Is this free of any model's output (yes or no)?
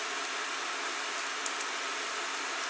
yes